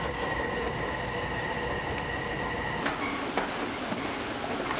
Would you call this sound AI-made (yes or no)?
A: no